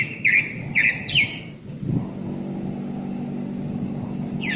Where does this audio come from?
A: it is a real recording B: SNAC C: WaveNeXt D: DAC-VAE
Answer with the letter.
A